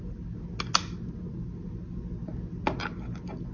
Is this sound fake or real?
real